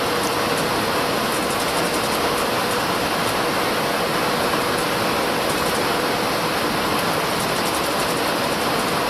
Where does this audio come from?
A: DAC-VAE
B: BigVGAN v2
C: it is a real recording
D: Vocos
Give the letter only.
C